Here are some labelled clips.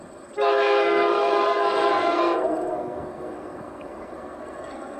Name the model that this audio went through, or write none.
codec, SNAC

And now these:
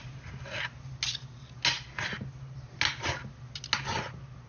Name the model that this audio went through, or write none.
none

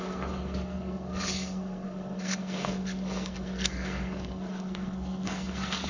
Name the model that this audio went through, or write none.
codec, SNAC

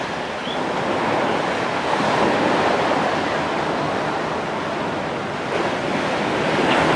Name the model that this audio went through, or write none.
none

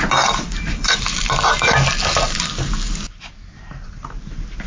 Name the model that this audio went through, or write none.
none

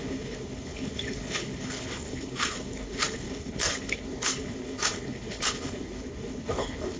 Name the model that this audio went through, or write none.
codec, HILCodec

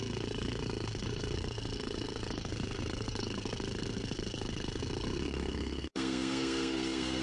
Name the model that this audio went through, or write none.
codec, SNAC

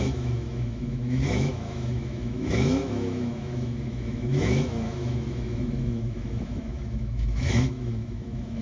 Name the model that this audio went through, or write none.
autoencoder, DAC-VAE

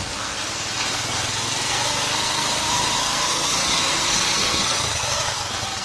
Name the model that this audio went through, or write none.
codec, SNAC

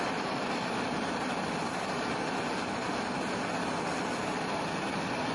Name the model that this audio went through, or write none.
vocoder, BigVGAN v2